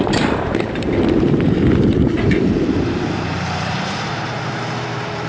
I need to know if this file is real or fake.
fake